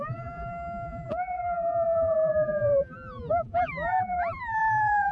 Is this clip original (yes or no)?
no